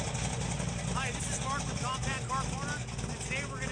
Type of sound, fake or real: real